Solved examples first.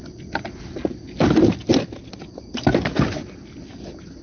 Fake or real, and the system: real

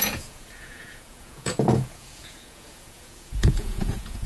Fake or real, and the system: fake, vocoder, Vocos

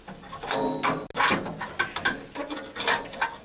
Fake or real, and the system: real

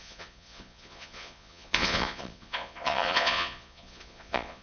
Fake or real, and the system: fake, vocoder, Vocos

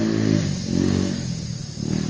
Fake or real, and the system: real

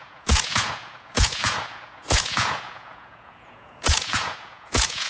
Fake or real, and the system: fake, vocoder, Vocos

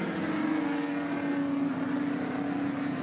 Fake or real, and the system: real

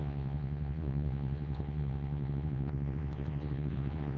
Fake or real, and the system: fake, vocoder, Vocos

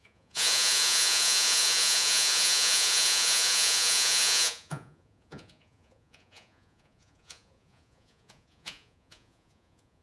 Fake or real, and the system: fake, vocoder, Vocos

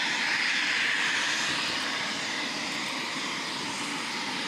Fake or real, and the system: real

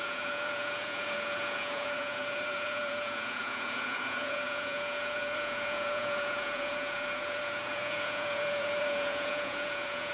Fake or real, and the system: fake, vocoder, Vocos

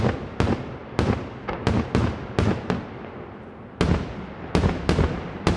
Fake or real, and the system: real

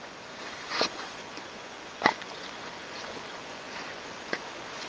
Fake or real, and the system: fake, vocoder, Vocos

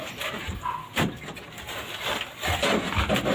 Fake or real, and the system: real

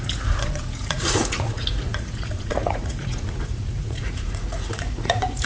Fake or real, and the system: fake, vocoder, Vocos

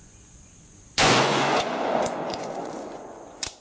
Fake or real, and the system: fake, vocoder, Vocos